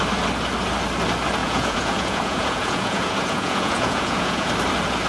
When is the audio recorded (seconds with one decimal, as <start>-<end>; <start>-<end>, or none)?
0.0-1.4; 4.5-5.1